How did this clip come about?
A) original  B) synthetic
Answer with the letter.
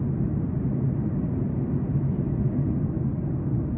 A